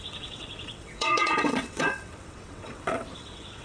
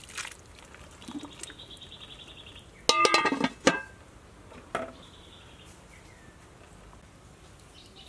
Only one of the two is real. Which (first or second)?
second